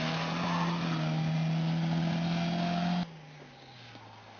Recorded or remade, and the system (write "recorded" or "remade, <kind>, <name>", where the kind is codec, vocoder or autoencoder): recorded